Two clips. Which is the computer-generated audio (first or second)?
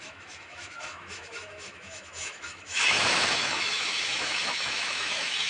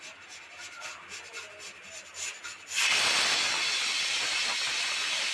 first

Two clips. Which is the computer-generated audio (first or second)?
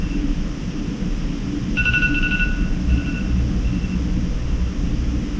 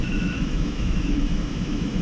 second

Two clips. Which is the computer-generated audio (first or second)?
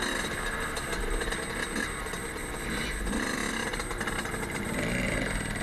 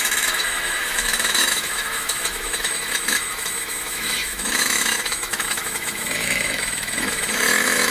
second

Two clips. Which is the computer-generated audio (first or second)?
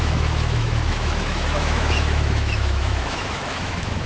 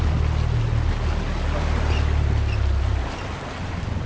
first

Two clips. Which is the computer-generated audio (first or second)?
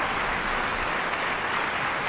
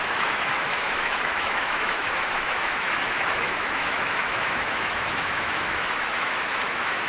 second